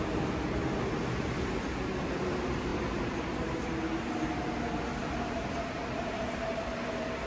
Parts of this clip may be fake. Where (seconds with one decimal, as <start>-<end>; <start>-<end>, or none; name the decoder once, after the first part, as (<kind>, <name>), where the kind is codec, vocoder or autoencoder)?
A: none